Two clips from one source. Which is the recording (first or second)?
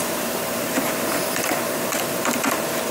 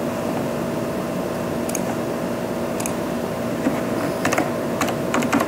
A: second